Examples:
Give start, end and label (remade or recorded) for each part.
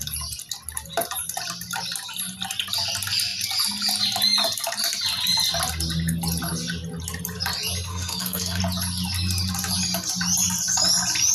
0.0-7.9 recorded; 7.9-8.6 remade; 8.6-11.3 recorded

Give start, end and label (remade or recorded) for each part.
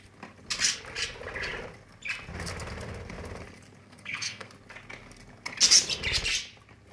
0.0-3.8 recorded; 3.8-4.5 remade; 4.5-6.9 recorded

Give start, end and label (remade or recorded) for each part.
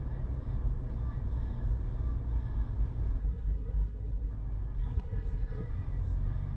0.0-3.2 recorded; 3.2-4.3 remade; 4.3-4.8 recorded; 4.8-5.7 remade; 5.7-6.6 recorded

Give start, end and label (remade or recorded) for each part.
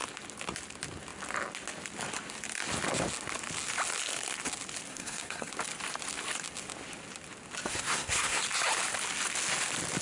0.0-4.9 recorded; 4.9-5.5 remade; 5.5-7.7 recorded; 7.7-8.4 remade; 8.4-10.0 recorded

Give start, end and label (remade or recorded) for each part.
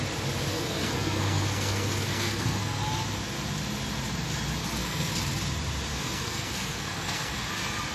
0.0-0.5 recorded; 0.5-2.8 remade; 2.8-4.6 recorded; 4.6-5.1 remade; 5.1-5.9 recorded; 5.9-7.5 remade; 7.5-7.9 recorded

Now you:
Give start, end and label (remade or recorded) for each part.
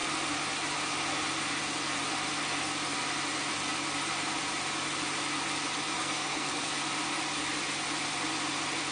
0.0-6.0 recorded; 6.0-6.7 remade; 6.7-8.9 recorded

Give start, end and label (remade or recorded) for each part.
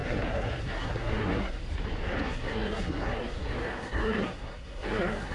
0.0-1.6 remade; 1.6-2.2 recorded; 2.2-5.3 remade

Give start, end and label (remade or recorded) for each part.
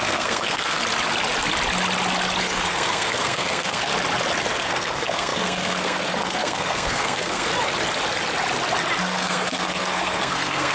0.0-0.8 remade; 0.8-2.4 recorded; 2.4-3.9 remade; 3.9-4.5 recorded; 4.5-7.5 remade; 7.5-9.0 recorded; 9.0-10.7 remade